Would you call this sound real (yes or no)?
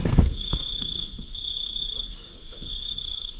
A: no